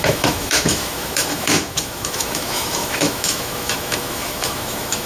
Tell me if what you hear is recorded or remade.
remade